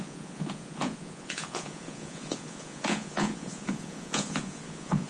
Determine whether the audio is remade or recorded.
remade